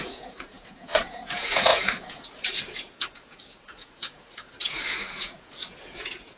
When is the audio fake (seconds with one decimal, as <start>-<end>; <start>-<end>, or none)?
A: 0.0-6.4